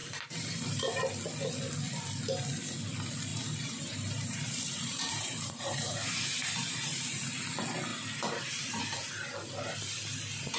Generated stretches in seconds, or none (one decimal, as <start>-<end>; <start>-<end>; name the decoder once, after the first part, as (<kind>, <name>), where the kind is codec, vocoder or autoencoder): 0.0-0.8 (vocoder, BigVGAN v2); 3.3-7.2; 7.9-8.8